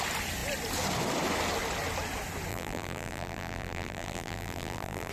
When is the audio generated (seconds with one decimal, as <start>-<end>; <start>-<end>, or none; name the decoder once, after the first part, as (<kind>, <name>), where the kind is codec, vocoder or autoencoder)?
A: 2.5-5.1 (vocoder, BigVGAN v2)